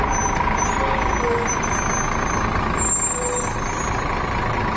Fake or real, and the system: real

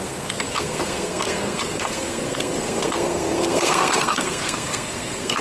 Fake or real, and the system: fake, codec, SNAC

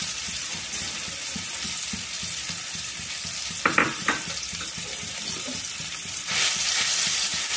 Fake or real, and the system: fake, vocoder, BigVGAN v2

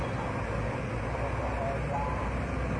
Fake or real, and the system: real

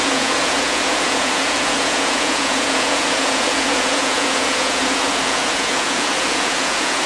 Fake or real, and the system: fake, vocoder, Vocos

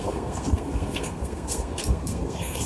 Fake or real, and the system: fake, codec, SNAC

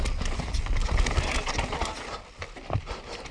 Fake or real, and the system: real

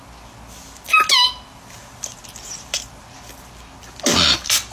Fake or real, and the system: real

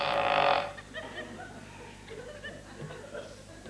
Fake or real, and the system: real